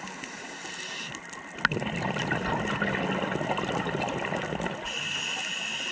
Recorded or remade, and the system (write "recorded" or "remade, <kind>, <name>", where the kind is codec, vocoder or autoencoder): recorded